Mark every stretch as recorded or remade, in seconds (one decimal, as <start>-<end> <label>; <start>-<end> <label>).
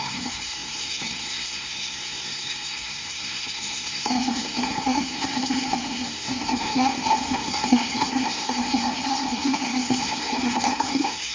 0.0-11.3 remade